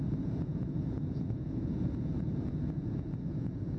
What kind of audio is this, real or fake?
fake